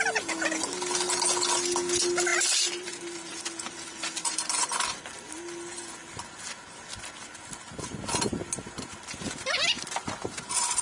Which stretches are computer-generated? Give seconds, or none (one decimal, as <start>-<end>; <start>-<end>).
2.3-5.0